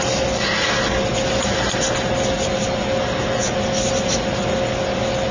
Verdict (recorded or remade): recorded